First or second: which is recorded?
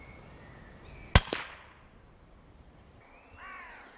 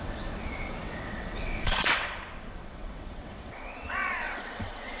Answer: first